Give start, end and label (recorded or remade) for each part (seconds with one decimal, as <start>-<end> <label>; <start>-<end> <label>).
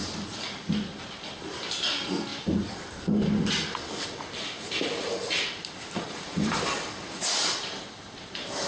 0.0-1.7 recorded; 1.7-2.3 remade; 2.3-6.0 recorded; 6.0-8.7 remade